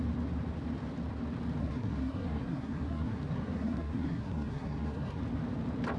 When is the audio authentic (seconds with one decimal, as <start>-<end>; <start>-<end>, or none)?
0.0-1.6; 5.2-6.0